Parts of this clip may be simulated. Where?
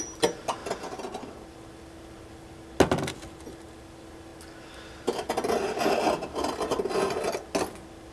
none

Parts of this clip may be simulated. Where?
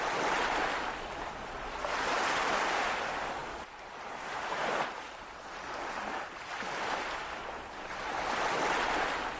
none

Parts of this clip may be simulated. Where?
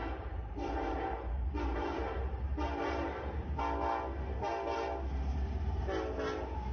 0.0-3.6 (vocoder, BigVGAN v2); 5.3-5.8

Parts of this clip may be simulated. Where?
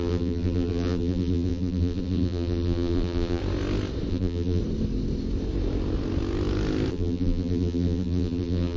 0.0-3.4 (vocoder, BigVGAN v2); 4.1-4.6; 6.9-8.8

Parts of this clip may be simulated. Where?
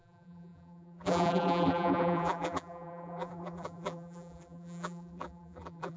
0.0-6.0 (vocoder, BigVGAN v2)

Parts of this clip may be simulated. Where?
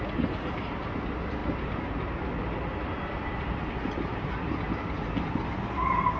3.8-4.4 (vocoder, BigVGAN v2)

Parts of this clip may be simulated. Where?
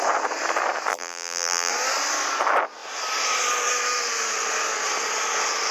0.9-1.7 (vocoder, BigVGAN v2)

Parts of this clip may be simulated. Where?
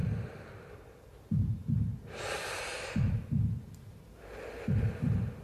0.7-1.6 (vocoder, BigVGAN v2); 4.8-5.4